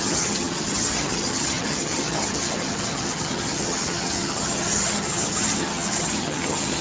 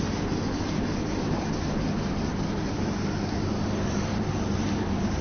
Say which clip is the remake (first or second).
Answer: first